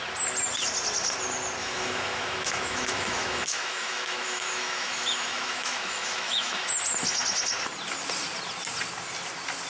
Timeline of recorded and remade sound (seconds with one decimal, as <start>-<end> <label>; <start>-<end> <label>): 0.0-1.6 recorded; 1.6-6.7 remade; 6.7-9.7 recorded

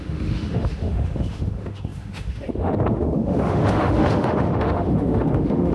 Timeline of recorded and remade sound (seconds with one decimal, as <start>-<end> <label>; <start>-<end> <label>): 0.0-5.7 remade

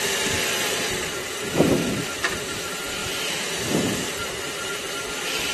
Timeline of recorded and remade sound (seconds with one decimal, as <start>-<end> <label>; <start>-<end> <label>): 0.0-5.5 recorded

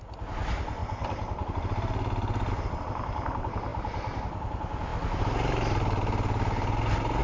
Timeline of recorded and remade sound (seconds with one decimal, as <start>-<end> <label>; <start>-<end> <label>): 0.0-7.2 recorded